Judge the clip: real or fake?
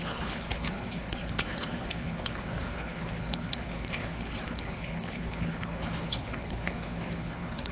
fake